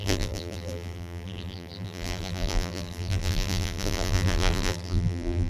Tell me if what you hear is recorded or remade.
remade